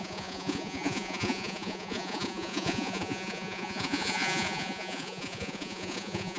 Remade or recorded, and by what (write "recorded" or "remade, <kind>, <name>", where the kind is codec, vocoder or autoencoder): remade, vocoder, Vocos